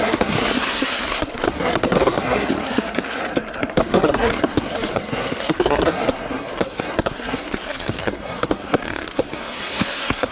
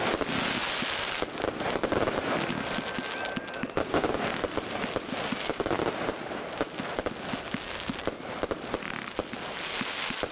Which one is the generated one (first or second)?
first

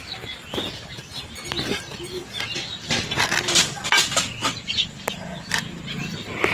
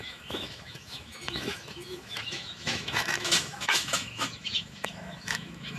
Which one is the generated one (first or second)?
second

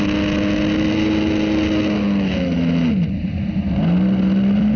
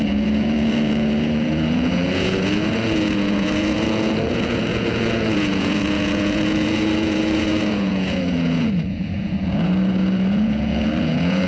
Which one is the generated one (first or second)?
second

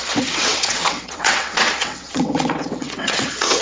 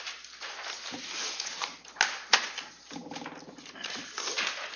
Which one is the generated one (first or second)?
first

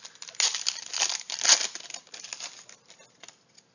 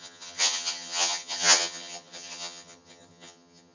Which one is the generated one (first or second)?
second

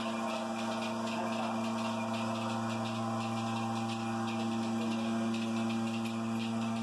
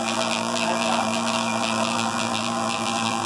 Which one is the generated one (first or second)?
second